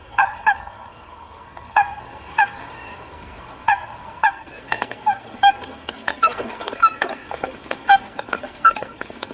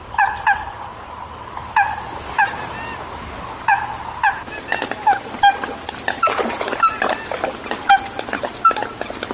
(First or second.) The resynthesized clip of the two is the first